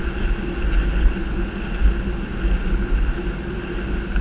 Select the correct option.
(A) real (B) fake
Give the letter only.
A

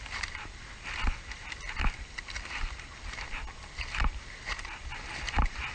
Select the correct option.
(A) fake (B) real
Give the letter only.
B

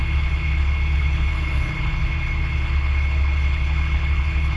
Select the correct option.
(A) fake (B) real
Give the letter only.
A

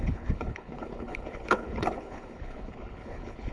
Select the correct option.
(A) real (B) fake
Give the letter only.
B